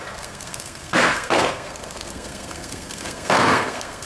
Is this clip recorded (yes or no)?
no